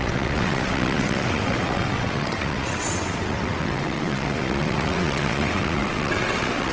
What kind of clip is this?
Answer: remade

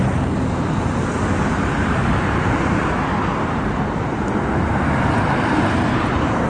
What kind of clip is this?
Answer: recorded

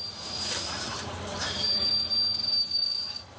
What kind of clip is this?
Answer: recorded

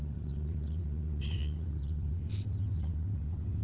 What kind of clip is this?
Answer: remade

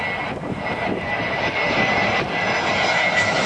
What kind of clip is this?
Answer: recorded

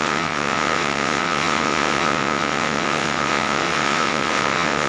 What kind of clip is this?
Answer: remade